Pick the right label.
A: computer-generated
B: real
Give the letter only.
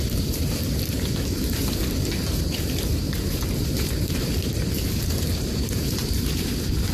A